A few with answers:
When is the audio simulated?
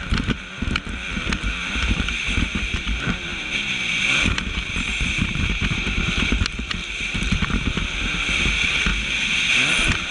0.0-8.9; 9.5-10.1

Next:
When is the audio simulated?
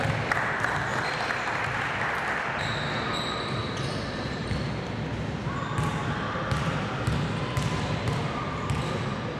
none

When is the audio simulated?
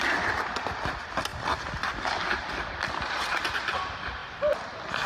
none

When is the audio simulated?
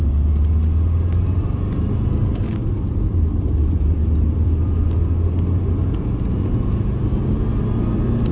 2.6-5.3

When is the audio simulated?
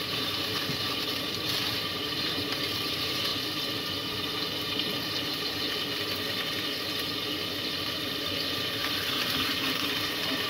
0.0-3.3; 8.5-10.5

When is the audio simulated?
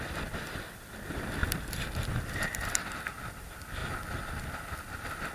none